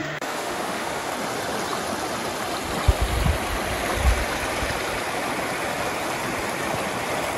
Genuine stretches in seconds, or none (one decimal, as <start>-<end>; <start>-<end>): 1.1-7.4